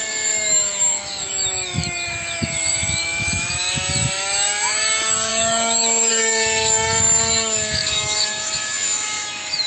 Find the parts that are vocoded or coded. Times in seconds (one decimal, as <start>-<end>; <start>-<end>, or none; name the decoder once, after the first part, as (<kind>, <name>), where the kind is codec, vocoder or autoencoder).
0.0-9.7 (autoencoder, DAC-VAE)